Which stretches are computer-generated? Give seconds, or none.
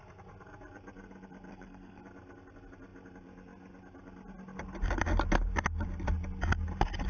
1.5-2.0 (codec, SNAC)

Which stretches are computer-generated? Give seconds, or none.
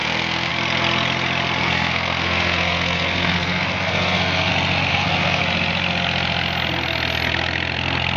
0.0-0.5 (codec, SNAC); 1.6-4.5; 4.9-5.4